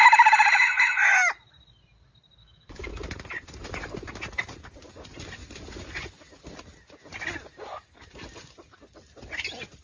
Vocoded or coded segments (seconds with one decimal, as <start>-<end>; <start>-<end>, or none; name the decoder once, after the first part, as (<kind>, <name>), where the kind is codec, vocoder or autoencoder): 2.4-2.9 (autoencoder, DAC-VAE)